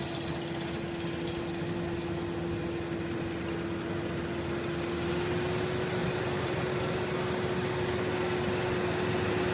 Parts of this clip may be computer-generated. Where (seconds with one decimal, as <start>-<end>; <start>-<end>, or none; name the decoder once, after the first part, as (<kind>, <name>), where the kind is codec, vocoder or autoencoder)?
6.0-7.0 (vocoder, BigVGAN v2)